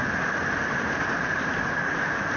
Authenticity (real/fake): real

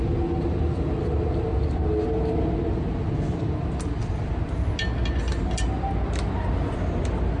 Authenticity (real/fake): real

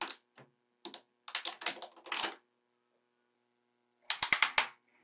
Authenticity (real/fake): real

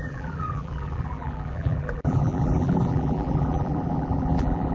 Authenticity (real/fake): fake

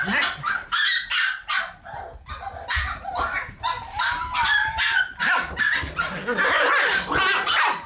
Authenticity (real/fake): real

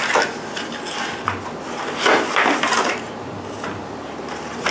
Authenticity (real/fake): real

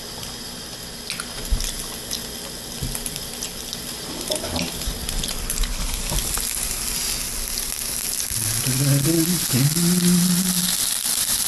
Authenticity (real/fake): real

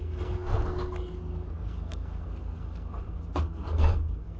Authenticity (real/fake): fake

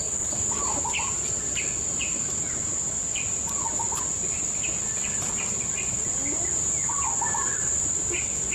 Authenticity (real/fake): real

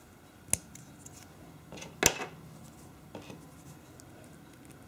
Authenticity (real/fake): real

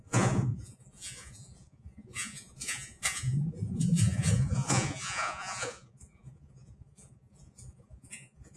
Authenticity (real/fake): fake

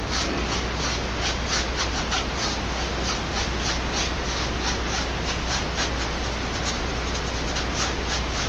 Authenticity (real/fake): real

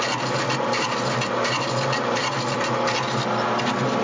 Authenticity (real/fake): real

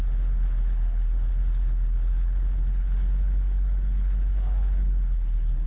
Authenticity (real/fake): fake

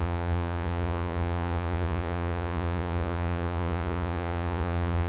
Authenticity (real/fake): fake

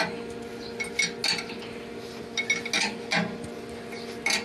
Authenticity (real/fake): real